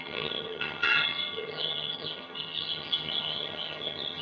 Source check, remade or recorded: remade